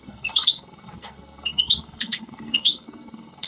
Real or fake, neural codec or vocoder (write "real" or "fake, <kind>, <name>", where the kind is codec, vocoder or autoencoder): fake, codec, SNAC